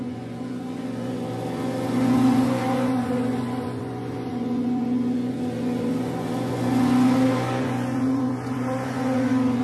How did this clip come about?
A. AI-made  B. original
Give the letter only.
A